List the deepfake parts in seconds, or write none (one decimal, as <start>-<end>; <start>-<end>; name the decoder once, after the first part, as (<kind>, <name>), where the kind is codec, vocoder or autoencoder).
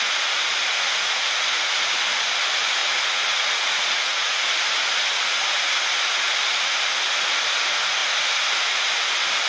0.7-1.7 (vocoder, Vocos); 2.8-4.5